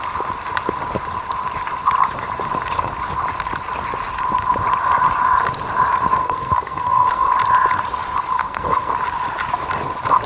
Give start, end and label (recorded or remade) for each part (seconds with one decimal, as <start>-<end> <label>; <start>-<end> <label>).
0.0-6.2 recorded; 6.2-7.3 remade; 7.3-8.3 recorded; 8.3-8.9 remade; 8.9-10.3 recorded